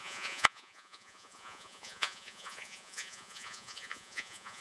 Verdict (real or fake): fake